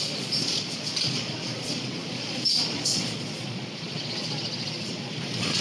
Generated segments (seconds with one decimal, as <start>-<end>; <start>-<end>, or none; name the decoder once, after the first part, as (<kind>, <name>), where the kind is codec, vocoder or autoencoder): 0.0-5.6 (vocoder, Vocos)